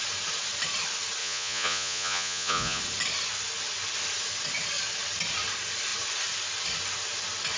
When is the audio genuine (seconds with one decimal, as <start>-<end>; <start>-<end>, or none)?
0.0-1.2; 2.8-7.6